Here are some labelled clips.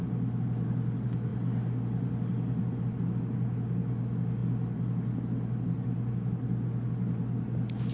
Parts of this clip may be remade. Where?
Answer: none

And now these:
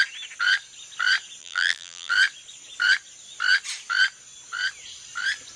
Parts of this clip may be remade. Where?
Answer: 1.4-2.1 (vocoder, BigVGAN v2)

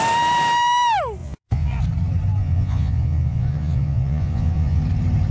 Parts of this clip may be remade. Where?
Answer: 1.2-1.8 (vocoder, Vocos); 2.4-4.8

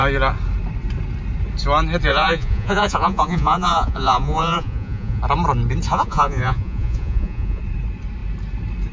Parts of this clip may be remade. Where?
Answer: 2.1-5.2 (vocoder, Vocos); 5.9-7.6

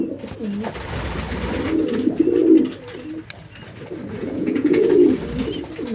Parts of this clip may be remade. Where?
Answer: 4.2-4.9 (vocoder, Vocos)

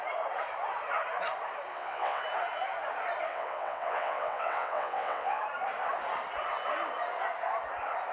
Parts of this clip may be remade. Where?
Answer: 1.7-2.2 (vocoder, WaveNeXt); 3.3-5.4

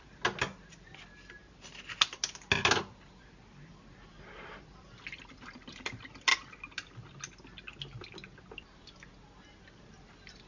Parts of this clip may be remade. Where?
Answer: none